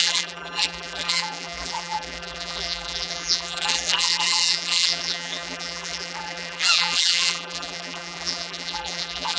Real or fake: fake